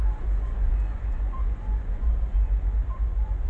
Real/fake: fake